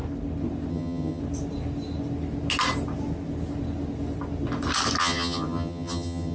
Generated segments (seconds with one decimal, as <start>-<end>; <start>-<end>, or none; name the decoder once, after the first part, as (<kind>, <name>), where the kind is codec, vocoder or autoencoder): 0.7-1.2 (vocoder, HiFi-GAN); 5.0-6.3